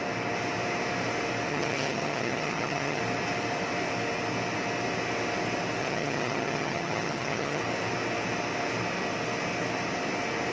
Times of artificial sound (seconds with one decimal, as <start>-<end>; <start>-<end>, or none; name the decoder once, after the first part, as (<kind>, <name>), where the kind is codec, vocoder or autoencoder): 1.5-3.0 (vocoder, HiFi-GAN); 5.8-7.6